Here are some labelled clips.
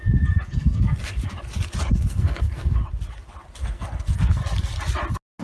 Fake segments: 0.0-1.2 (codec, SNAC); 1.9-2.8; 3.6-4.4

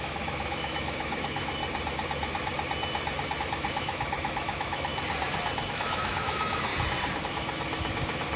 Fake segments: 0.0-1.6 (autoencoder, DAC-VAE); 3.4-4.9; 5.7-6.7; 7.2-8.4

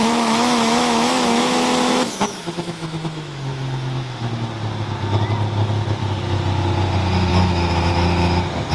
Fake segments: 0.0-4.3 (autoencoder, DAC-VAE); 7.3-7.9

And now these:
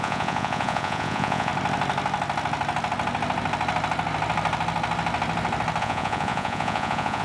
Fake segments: 0.0-1.5 (vocoder, Vocos); 5.8-7.2